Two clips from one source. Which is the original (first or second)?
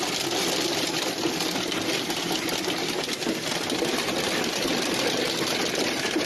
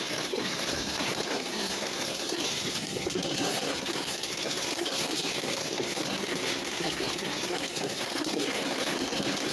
first